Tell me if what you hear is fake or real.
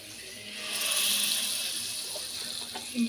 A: real